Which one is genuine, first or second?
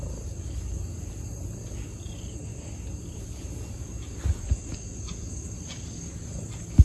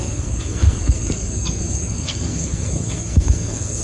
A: first